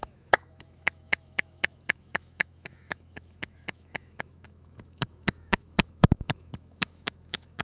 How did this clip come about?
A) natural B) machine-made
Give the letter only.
B